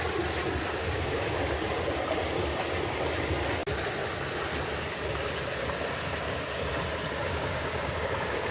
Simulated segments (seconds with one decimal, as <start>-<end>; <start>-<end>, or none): 0.8-1.4; 7.2-8.5